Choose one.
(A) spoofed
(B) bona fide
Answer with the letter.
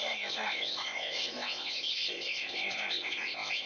A